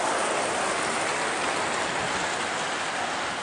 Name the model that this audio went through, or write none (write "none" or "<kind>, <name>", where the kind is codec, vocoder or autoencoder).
none